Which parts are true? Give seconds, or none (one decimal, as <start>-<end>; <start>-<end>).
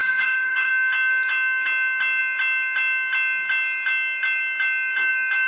0.7-5.5